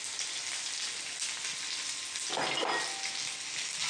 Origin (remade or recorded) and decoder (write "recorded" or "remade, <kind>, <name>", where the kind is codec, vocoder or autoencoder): recorded